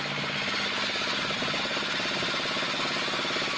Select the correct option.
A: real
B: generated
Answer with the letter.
A